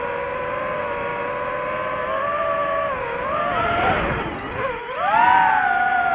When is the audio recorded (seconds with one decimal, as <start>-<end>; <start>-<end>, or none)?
0.0-6.1